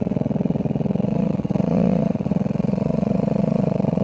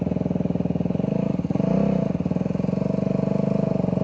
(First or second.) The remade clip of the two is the first